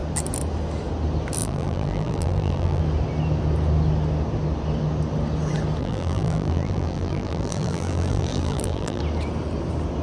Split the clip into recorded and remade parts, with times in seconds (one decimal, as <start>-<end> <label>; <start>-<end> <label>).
0.0-1.4 recorded; 1.4-2.8 remade; 2.8-5.8 recorded; 5.8-9.0 remade; 9.0-10.0 recorded